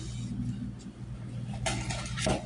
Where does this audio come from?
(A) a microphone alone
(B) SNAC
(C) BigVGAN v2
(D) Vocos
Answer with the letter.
A